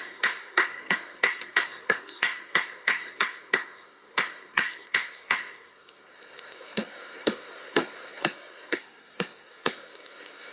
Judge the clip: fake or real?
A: fake